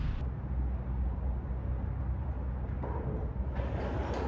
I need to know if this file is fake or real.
real